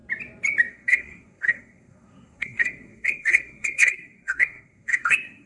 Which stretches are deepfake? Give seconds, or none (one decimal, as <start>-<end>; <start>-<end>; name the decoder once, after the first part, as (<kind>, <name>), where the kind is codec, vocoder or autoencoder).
0.7-5.5 (codec, SNAC)

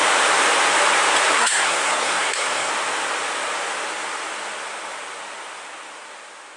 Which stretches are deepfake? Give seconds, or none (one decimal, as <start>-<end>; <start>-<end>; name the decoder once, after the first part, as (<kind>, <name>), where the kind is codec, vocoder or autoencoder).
1.3-2.7 (codec, SNAC)

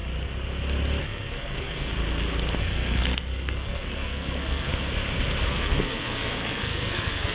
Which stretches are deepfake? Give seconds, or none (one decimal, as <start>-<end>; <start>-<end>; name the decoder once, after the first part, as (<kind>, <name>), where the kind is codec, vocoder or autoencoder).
1.0-1.9 (codec, SNAC); 2.6-4.7; 5.5-7.3

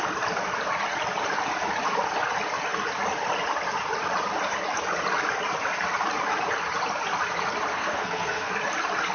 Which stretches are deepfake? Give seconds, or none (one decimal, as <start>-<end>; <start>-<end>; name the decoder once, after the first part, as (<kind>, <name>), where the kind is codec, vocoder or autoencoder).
7.7-8.5 (codec, SNAC)

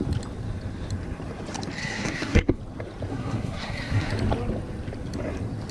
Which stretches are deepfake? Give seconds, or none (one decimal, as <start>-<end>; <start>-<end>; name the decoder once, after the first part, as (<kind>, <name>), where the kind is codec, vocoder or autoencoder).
1.8-2.6 (codec, SNAC); 3.1-4.1

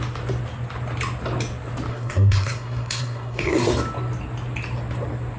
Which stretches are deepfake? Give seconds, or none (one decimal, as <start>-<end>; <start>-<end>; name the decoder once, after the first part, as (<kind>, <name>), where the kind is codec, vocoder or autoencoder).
1.9-3.7 (codec, SNAC)